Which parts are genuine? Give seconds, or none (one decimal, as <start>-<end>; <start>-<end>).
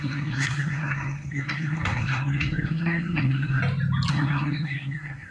3.6-4.1